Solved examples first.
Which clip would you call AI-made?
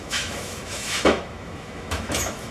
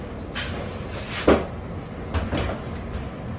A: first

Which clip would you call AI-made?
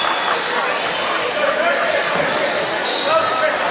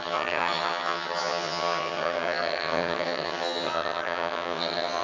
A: second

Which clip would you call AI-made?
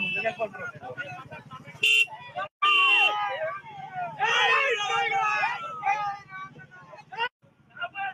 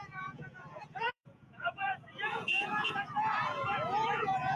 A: second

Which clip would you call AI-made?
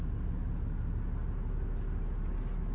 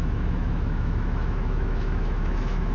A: second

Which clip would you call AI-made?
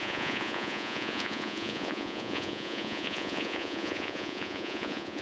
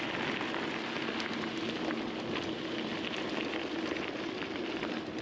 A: first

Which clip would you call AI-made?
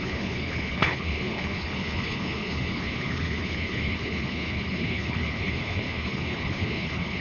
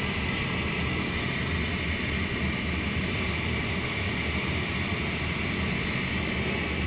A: first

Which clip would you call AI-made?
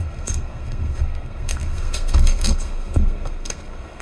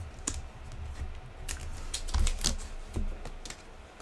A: first